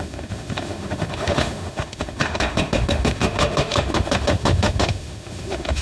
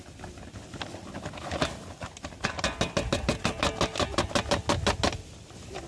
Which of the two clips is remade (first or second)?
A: first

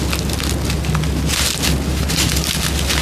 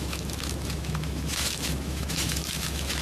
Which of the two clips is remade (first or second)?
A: second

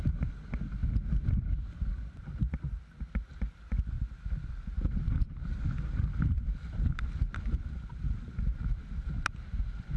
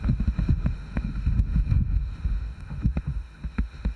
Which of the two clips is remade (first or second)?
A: second